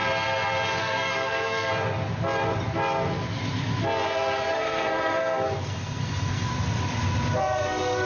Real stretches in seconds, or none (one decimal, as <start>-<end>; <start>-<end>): 0.0-0.8; 1.7-4.5; 6.5-7.4